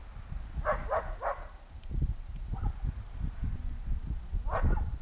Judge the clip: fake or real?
real